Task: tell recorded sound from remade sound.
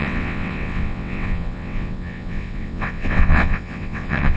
remade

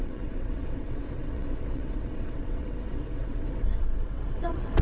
remade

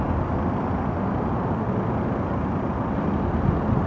recorded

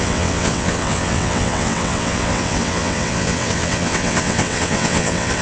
remade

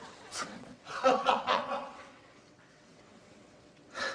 remade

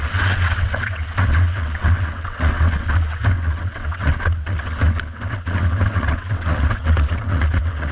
remade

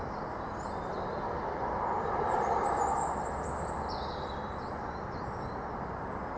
recorded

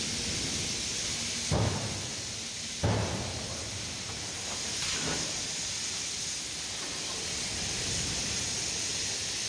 recorded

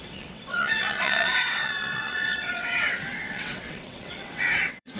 remade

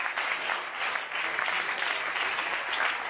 recorded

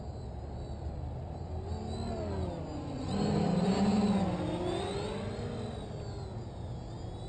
recorded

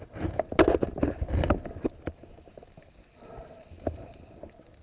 recorded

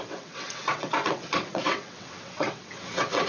remade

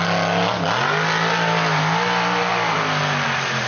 recorded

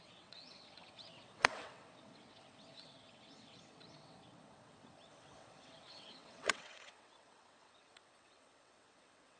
remade